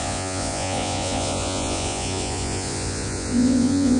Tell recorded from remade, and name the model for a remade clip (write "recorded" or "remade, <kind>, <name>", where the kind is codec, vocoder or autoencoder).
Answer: remade, vocoder, Vocos